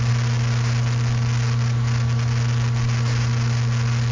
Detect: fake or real real